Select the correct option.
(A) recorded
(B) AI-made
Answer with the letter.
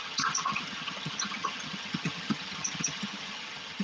B